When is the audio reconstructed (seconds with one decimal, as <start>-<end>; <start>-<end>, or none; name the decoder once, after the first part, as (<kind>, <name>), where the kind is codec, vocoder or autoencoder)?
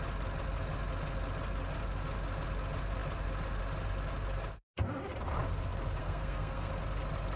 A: 6.0-6.7 (codec, SNAC)